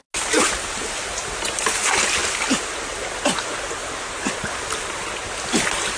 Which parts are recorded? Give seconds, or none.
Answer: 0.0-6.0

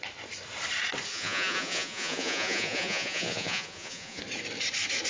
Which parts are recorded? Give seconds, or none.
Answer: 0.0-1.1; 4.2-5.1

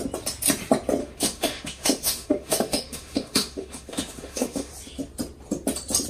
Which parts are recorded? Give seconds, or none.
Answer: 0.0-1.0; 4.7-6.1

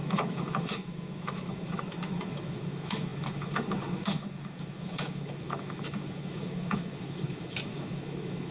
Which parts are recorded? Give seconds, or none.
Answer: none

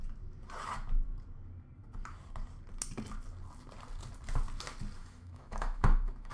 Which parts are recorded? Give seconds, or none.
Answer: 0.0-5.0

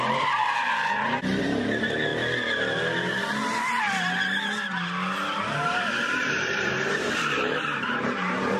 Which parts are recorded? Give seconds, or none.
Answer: 0.7-1.4; 2.1-5.5

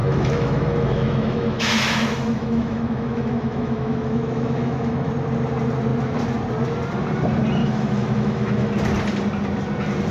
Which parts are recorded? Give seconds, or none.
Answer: 5.1-7.6; 8.7-10.1